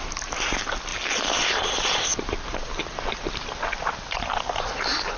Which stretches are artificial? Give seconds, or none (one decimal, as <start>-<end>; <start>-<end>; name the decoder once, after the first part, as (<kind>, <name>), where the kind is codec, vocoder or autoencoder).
none

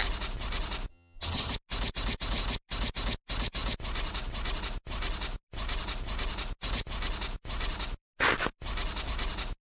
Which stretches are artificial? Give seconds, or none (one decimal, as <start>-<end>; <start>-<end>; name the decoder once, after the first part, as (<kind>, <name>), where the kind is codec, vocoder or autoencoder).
0.9-1.5 (vocoder, HiFi-GAN)

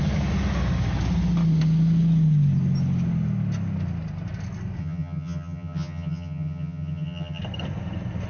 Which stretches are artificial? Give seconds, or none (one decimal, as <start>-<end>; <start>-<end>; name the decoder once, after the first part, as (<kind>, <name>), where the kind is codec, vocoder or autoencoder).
4.8-7.4 (vocoder, HiFi-GAN)

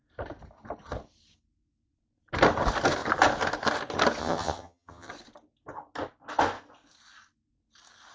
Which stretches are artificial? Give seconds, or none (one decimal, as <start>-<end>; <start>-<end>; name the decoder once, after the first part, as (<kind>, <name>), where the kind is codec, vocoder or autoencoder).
4.2-5.1 (vocoder, HiFi-GAN)